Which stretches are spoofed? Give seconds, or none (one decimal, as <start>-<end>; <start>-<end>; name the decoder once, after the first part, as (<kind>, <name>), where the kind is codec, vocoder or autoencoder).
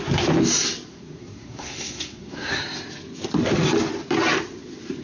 0.9-2.6 (codec, SNAC)